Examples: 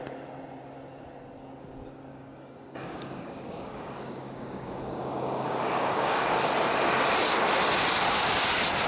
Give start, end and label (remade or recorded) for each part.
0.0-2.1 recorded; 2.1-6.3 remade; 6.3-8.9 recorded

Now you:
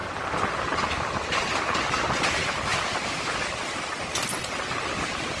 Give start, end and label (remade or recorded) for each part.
0.0-5.4 recorded

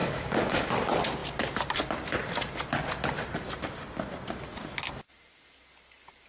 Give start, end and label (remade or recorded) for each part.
0.0-0.7 remade; 0.7-6.3 recorded

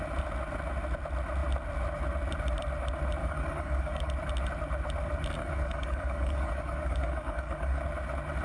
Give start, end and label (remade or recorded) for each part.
0.0-3.2 recorded; 3.2-4.1 remade; 4.1-5.4 recorded; 5.4-7.8 remade; 7.8-8.4 recorded

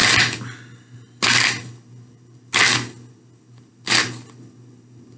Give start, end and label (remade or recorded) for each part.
0.0-5.2 recorded

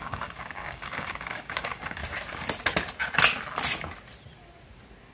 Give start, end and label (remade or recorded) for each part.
0.0-2.0 remade; 2.0-5.1 recorded